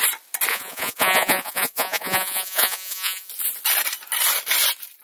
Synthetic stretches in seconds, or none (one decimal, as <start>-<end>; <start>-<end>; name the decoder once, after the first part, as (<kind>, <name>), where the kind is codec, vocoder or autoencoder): 0.5-3.3 (vocoder, Vocos)